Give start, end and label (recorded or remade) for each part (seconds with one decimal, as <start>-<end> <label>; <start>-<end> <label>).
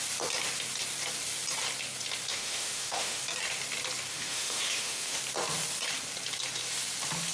0.0-2.3 recorded; 2.3-3.2 remade; 3.2-4.1 recorded; 4.1-5.2 remade; 5.2-7.3 recorded